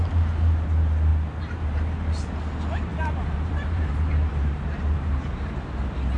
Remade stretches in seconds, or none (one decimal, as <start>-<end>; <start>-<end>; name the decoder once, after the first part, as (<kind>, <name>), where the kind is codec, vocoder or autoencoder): 2.9-5.5 (vocoder, BigVGAN v2)